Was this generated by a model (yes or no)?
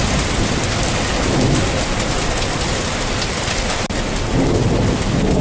no